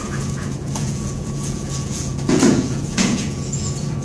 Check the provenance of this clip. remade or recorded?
remade